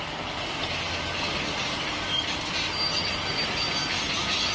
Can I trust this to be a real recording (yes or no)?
yes